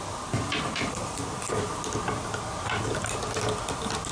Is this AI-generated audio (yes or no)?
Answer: no